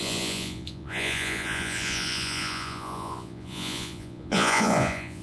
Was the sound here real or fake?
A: fake